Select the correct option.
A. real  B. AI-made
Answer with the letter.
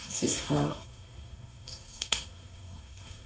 B